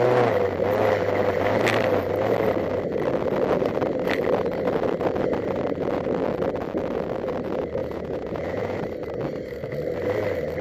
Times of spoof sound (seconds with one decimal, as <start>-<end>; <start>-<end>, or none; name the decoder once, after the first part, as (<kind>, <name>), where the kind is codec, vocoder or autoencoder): 7.8-8.8 (vocoder, Vocos)